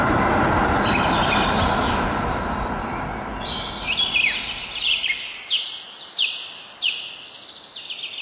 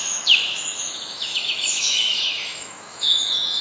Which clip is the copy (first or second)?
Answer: second